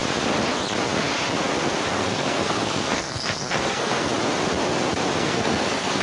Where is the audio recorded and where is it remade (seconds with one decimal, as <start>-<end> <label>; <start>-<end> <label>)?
0.0-1.9 recorded; 1.9-4.1 remade; 4.1-5.2 recorded; 5.2-6.0 remade